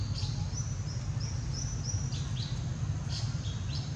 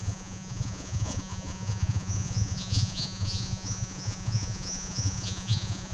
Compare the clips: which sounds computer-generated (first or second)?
second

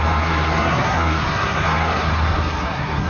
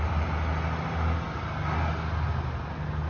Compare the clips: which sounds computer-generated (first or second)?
first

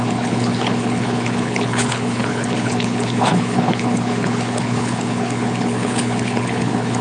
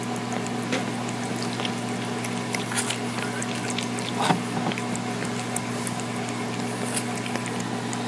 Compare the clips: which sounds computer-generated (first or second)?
first